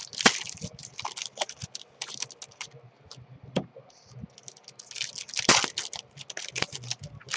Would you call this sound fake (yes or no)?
no